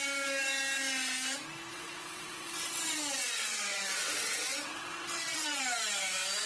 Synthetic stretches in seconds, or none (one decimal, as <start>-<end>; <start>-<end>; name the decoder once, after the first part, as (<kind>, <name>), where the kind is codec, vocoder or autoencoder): 1.7-5.6 (vocoder, WaveNeXt)